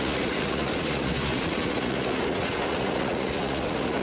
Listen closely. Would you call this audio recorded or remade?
remade